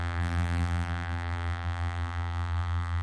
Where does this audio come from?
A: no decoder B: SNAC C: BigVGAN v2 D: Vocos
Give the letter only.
C